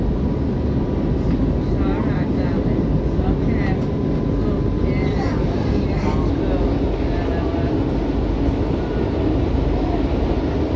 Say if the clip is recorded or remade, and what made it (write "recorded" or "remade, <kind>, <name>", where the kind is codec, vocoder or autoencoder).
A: recorded